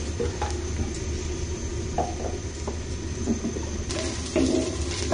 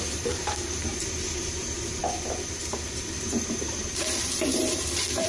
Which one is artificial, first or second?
second